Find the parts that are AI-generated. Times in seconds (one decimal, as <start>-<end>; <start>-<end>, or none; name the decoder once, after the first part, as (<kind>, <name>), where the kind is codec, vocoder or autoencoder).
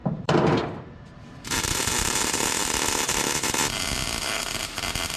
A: 0.0-3.6 (vocoder, BigVGAN v2)